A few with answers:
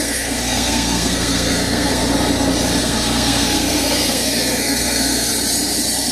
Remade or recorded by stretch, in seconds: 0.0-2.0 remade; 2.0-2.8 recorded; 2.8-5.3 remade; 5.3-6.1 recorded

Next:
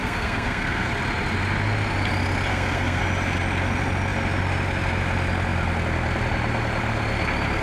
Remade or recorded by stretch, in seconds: 0.0-0.9 remade; 0.9-2.5 recorded; 2.5-3.0 remade; 3.0-7.6 recorded

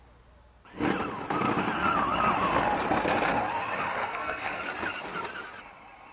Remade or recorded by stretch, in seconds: 0.0-4.0 recorded; 4.0-4.6 remade; 4.6-6.1 recorded

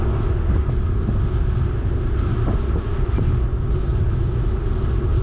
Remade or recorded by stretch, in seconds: 0.0-5.2 recorded

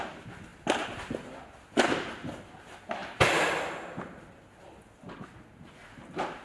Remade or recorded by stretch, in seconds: 0.0-6.4 recorded

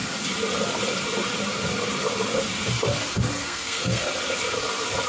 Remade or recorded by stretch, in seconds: 0.0-3.4 recorded; 3.4-4.1 remade; 4.1-5.1 recorded

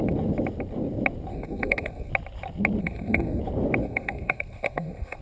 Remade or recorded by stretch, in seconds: 0.0-1.3 recorded; 1.3-2.1 remade; 2.1-2.8 recorded; 2.8-3.4 remade; 3.4-3.8 recorded; 3.8-5.2 remade